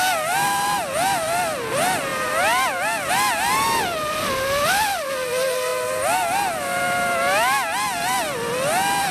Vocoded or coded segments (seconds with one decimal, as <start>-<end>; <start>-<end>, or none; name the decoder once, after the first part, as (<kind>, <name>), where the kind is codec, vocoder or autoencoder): none